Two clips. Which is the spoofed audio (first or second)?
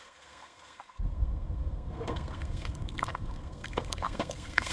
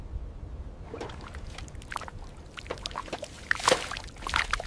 first